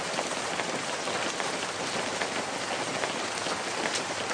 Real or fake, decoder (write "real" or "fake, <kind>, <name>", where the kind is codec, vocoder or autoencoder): real